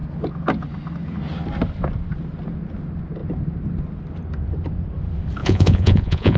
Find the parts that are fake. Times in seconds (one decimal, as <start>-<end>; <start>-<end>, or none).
5.4-6.4